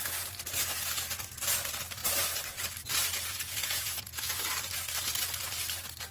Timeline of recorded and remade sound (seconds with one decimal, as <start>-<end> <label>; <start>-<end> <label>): 0.0-3.1 recorded; 3.1-4.3 remade; 4.3-6.1 recorded